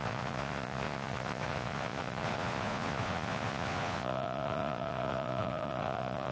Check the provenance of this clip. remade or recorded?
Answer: remade